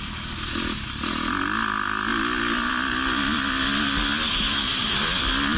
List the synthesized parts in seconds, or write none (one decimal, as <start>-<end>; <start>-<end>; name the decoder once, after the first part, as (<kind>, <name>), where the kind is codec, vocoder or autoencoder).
none